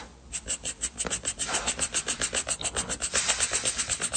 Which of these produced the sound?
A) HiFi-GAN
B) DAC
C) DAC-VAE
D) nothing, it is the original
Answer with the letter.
D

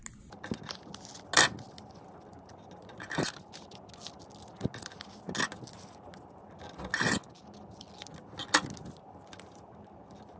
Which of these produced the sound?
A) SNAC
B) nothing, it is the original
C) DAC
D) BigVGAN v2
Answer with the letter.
B